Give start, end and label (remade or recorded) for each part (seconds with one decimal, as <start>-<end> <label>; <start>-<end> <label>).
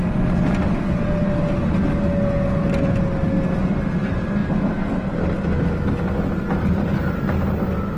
0.0-8.0 recorded